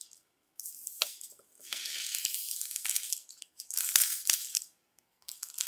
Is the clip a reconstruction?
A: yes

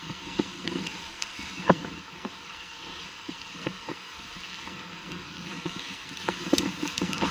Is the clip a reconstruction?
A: yes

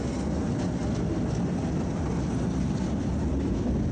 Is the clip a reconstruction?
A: no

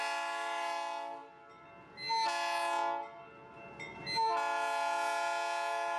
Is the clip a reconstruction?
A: no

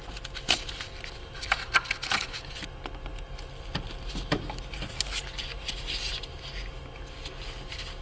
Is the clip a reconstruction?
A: no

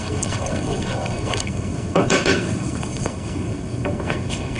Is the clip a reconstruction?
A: yes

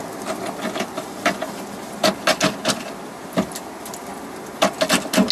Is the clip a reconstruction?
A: no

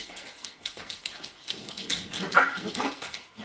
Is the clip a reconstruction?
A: yes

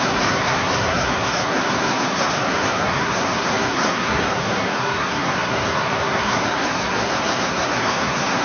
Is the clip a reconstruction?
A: yes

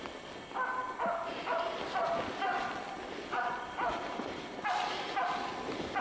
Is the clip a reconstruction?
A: no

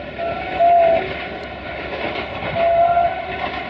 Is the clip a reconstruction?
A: no